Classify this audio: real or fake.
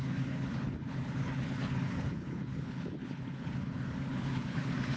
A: fake